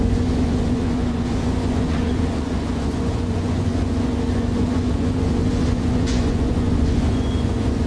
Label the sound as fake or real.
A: fake